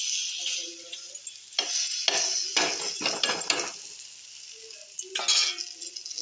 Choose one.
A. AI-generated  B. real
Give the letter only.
B